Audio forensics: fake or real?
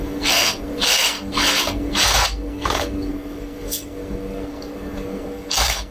fake